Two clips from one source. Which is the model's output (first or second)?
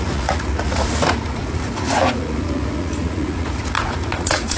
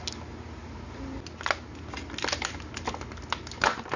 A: first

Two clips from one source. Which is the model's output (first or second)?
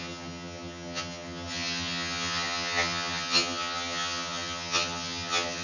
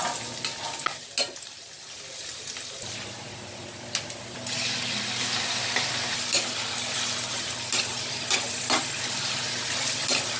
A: first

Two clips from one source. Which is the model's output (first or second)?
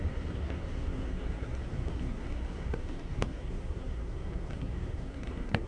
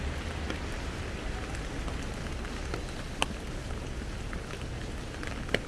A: first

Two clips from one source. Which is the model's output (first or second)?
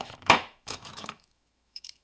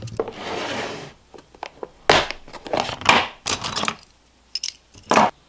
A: first